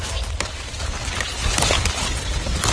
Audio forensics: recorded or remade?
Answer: recorded